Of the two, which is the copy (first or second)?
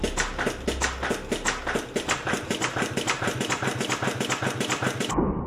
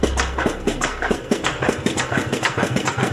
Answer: second